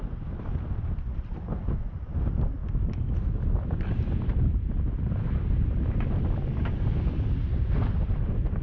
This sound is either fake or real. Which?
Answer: real